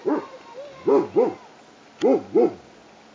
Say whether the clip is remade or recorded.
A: recorded